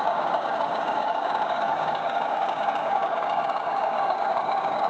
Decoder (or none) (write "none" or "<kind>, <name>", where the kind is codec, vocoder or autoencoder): codec, DAC